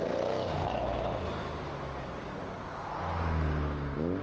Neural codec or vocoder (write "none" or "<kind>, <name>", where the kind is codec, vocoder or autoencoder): none